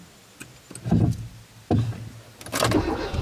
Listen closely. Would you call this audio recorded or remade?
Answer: recorded